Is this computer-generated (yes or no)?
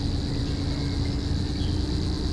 no